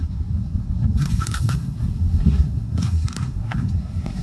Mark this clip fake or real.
fake